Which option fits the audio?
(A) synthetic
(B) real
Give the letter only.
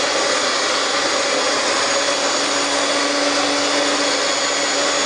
B